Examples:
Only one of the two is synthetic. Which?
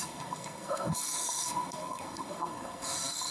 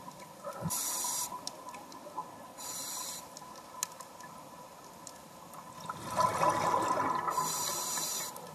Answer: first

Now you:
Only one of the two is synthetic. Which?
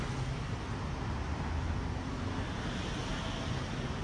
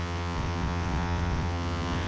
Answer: second